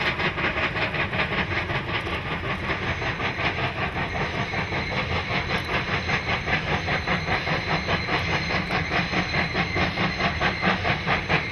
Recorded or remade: recorded